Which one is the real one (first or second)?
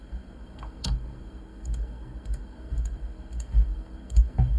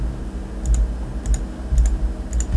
second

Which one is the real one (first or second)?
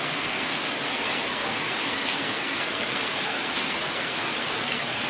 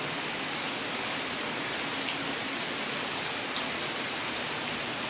second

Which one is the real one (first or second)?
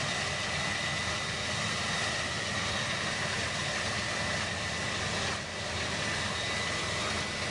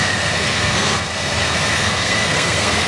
first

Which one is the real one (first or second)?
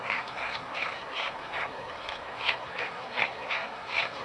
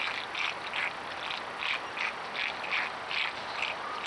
second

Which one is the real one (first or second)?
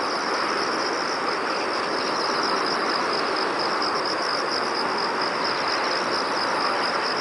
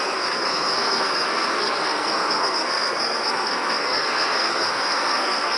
first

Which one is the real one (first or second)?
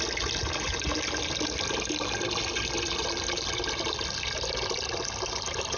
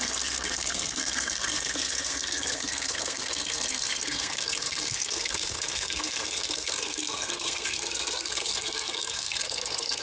first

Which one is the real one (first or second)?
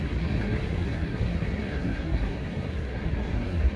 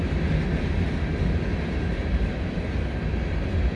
second